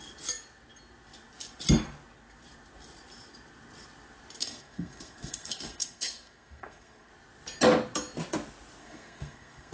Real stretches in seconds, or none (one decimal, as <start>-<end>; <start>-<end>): 0.0-4.4; 7.1-8.8